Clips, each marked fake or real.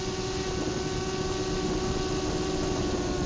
real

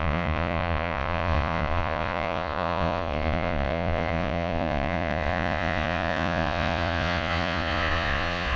fake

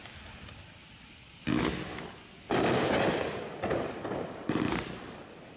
real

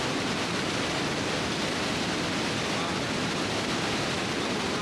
real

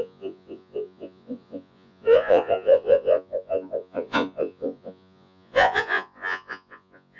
fake